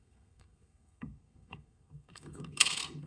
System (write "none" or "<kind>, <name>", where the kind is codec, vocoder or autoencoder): codec, SNAC